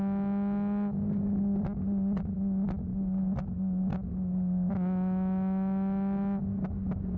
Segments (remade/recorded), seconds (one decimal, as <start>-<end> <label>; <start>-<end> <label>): 0.0-7.2 recorded